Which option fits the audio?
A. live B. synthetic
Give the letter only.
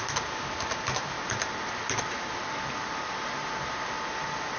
A